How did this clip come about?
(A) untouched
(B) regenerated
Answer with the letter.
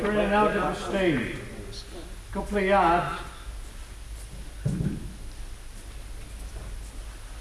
A